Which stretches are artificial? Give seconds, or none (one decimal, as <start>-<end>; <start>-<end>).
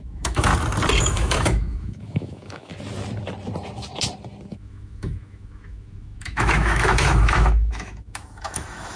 0.0-0.5; 1.0-2.7; 4.5-9.0